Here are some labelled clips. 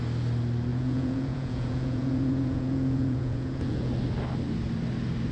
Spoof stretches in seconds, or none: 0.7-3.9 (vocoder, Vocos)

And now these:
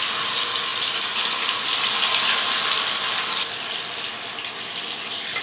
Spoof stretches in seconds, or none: 0.7-3.9 (vocoder, BigVGAN v2)

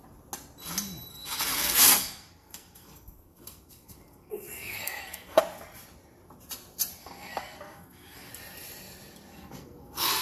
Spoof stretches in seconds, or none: 1.1-5.4 (codec, SNAC); 7.0-8.3; 9.3-10.2

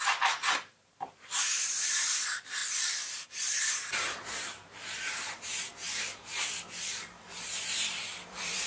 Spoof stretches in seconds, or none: 0.0-8.7 (vocoder, BigVGAN v2)

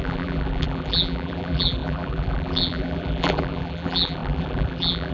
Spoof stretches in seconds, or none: 0.0-5.1 (vocoder, BigVGAN v2)

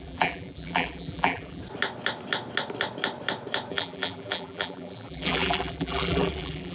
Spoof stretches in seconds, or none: 0.0-1.6 (vocoder, BigVGAN v2); 3.7-6.7